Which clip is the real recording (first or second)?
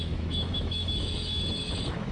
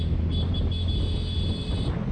second